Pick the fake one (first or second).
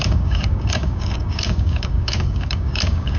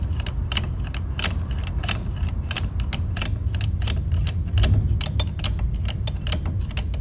first